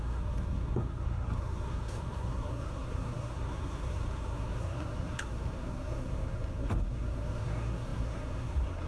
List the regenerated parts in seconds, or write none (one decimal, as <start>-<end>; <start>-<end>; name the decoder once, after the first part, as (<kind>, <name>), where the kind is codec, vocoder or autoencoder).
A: 0.0-8.9 (codec, SNAC)